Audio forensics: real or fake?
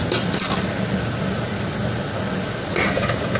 real